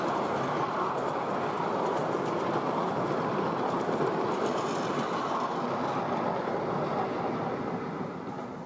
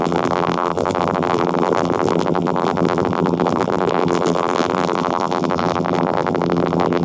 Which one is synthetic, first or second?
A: second